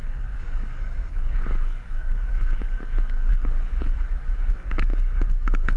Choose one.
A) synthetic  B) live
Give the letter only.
A